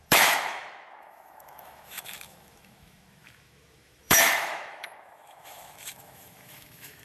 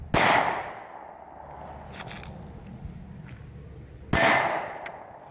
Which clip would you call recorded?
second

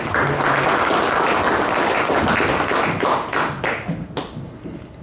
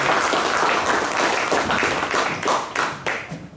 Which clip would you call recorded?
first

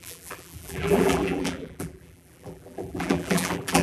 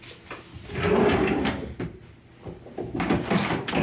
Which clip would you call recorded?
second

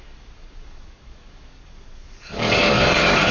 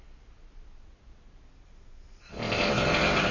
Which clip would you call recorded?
second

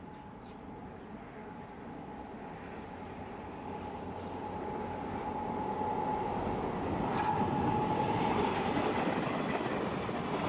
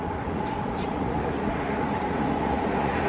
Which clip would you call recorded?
first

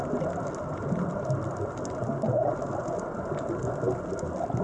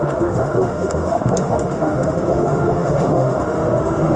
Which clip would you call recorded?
first